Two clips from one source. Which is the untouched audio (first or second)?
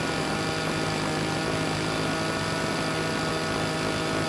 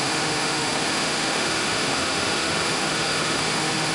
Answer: first